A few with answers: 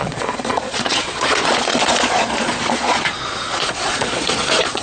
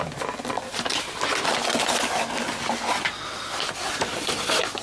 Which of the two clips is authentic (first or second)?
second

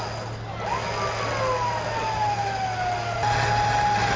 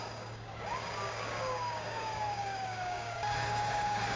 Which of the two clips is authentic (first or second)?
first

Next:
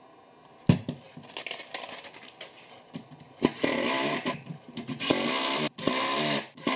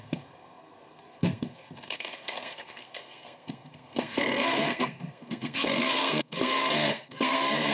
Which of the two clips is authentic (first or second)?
first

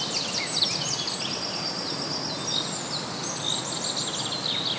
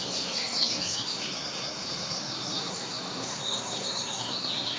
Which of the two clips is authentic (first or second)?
first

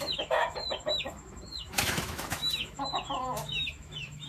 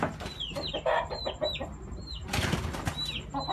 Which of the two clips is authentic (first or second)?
second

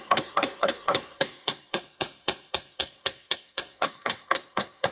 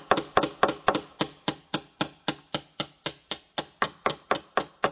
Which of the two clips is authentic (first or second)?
second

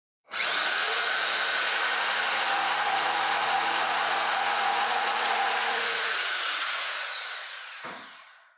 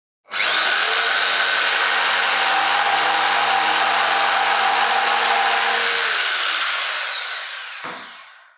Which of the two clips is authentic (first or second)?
second